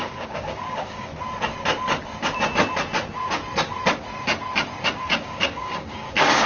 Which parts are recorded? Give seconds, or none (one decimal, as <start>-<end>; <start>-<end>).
1.1-5.0